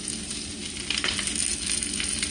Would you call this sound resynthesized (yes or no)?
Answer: no